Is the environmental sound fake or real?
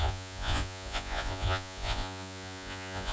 fake